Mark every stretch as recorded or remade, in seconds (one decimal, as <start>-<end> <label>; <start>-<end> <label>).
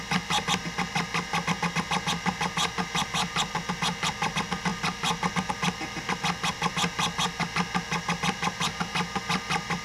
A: 0.0-9.8 recorded